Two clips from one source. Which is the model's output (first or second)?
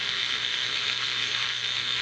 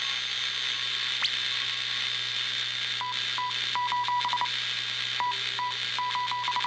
first